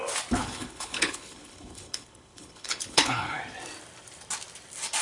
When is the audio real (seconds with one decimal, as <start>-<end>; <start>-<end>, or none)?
0.0-0.4; 3.4-5.0